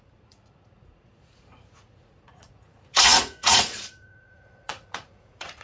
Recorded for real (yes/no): no